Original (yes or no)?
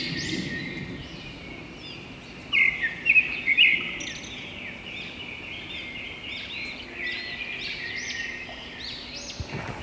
yes